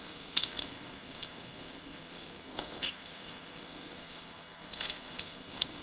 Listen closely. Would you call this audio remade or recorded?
remade